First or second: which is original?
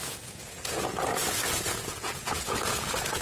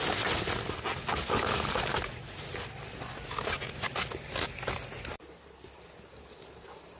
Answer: second